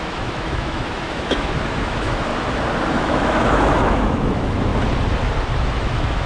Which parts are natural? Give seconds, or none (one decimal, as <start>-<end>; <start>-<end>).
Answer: 2.3-2.9; 4.7-5.6